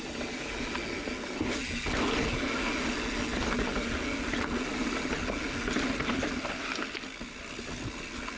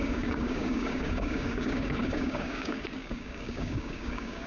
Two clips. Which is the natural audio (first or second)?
first